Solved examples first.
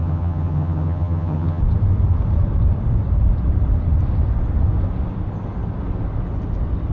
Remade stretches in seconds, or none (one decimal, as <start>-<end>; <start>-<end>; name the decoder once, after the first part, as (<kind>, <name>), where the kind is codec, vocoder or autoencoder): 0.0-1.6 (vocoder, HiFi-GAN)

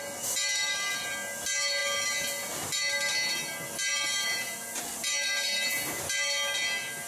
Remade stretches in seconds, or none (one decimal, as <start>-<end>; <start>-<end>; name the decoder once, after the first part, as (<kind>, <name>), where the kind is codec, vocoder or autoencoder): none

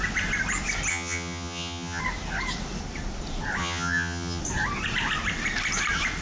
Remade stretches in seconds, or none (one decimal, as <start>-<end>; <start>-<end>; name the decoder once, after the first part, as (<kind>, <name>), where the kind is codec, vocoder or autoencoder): 0.9-2.0 (vocoder, HiFi-GAN); 3.6-4.4